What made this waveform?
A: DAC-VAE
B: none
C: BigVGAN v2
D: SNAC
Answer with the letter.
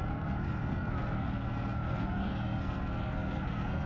D